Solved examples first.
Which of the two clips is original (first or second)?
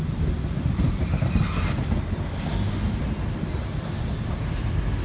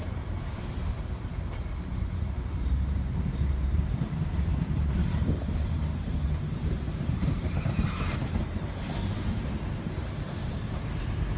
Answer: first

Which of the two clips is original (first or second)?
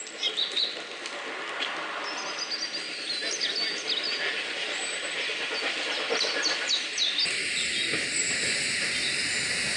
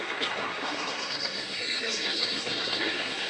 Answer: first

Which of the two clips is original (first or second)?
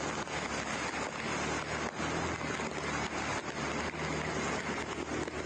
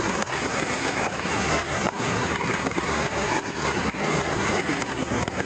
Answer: first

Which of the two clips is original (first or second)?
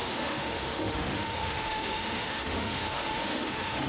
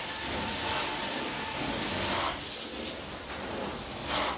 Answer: second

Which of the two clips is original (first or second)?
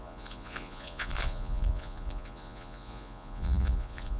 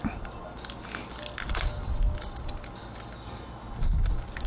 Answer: second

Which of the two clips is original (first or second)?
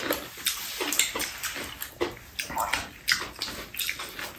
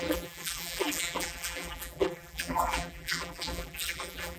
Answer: first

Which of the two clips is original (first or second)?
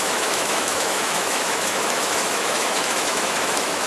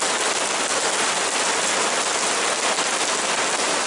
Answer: second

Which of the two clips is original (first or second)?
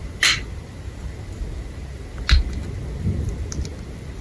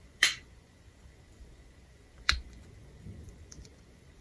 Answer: first